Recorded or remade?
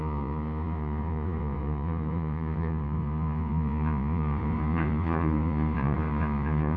remade